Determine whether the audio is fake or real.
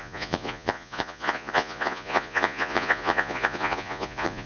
fake